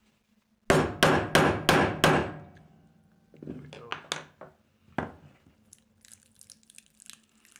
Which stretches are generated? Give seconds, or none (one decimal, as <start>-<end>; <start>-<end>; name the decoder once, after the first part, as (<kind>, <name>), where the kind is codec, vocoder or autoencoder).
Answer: none